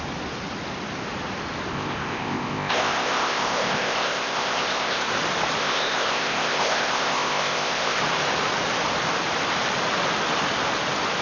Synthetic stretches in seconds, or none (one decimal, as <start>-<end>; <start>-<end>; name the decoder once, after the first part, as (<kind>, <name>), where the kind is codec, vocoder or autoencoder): 1.7-5.1 (codec, ZipCodec); 5.6-8.0